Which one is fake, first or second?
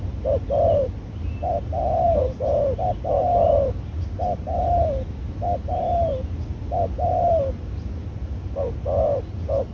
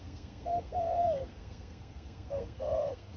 second